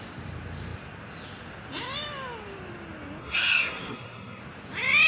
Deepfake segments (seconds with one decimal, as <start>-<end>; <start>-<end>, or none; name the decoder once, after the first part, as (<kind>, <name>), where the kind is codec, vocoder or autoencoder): 3.2-4.4 (codec, SNAC)